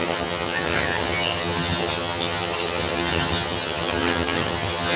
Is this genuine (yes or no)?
no